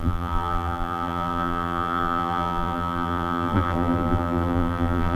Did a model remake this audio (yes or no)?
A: yes